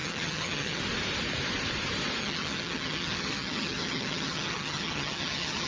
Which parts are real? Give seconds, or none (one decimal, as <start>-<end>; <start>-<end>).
0.8-2.2

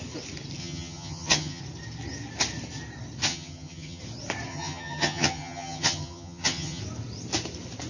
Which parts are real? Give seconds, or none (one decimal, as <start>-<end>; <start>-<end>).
0.0-0.6; 1.6-3.3; 4.0-4.5; 6.8-7.9

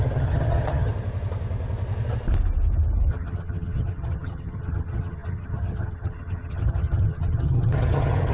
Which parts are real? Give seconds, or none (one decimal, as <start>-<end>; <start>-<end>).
0.9-3.1

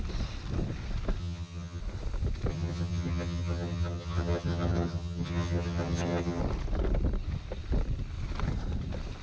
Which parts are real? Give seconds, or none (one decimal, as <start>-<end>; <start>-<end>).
0.0-1.2; 1.8-2.5; 6.4-9.2

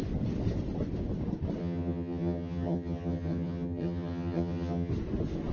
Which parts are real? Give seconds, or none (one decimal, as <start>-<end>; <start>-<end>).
0.0-1.6; 4.9-5.5

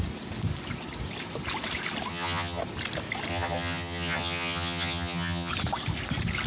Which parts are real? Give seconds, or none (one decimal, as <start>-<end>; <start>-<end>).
0.0-2.1; 2.6-3.3; 5.5-6.5

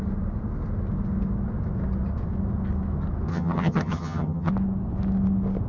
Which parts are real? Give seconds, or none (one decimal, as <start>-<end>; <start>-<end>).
0.0-3.3; 4.5-5.7

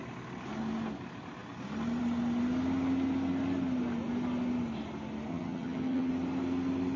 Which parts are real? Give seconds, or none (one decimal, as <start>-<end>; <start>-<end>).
0.0-5.3; 6.1-7.0